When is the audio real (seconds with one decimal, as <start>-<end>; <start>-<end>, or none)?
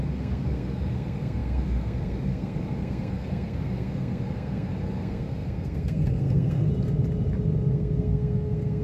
6.7-7.7